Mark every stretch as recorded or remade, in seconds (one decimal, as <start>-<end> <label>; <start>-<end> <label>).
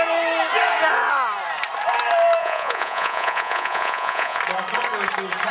0.0-2.4 recorded; 2.4-4.4 remade; 4.4-5.5 recorded